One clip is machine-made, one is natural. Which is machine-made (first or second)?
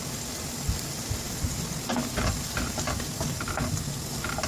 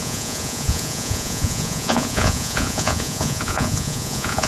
second